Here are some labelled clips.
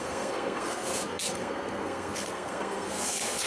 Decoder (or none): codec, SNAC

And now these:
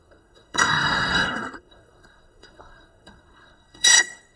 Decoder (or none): codec, SNAC